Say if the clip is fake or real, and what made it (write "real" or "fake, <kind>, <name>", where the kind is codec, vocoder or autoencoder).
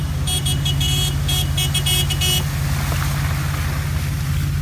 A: real